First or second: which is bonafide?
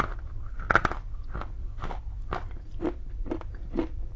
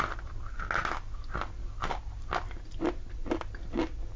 second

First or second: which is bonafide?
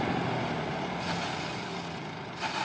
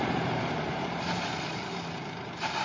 first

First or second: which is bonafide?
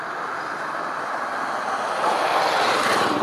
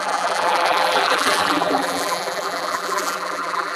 first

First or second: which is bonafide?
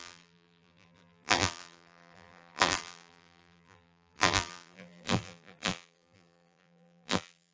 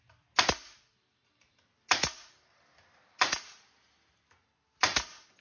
second